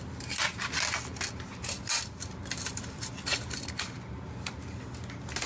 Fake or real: real